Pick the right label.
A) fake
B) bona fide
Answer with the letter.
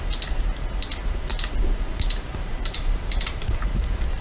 B